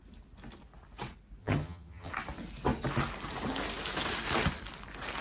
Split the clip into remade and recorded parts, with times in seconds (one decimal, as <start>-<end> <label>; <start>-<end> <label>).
0.0-1.4 recorded; 1.4-2.1 remade; 2.1-5.2 recorded